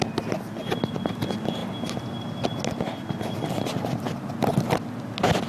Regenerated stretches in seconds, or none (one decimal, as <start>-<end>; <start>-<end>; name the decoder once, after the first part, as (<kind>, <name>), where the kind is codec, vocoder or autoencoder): none